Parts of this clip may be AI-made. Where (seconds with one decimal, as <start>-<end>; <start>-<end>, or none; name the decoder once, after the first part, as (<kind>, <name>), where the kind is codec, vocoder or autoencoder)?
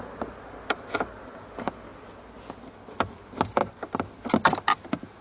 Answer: none